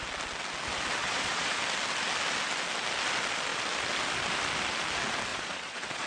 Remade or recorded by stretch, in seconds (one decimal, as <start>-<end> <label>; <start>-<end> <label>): 0.0-1.0 recorded; 1.0-1.6 remade; 1.6-5.3 recorded; 5.3-6.1 remade